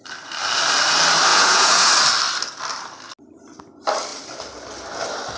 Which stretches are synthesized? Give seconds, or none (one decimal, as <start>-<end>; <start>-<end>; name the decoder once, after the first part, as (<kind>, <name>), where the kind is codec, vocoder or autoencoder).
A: 1.3-1.9 (vocoder, Vocos)